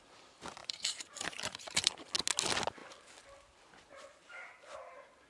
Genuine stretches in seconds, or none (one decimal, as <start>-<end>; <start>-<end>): 0.0-0.6; 2.1-5.3